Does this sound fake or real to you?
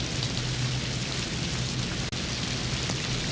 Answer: real